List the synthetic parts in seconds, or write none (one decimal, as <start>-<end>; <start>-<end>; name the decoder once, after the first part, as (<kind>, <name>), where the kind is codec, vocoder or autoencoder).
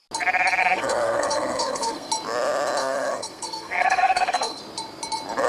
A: 0.6-2.1 (codec, SNAC); 2.8-4.6